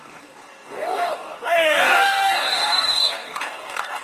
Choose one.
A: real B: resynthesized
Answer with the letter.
B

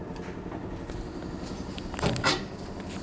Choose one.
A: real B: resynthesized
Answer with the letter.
A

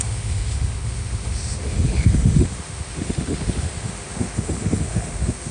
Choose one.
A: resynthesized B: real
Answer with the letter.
A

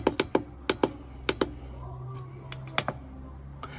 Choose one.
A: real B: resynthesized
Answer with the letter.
A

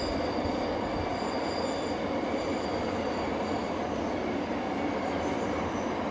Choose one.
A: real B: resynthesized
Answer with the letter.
A